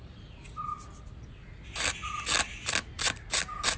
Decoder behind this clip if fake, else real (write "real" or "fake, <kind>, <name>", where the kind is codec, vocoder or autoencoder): real